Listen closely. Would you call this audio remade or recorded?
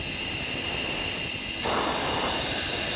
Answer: recorded